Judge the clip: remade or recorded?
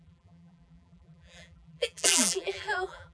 remade